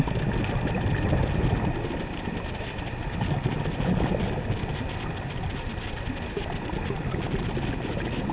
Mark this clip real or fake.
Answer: real